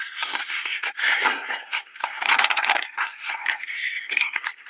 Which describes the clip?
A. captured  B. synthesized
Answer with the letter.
B